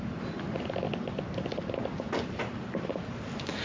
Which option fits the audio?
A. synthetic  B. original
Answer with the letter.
B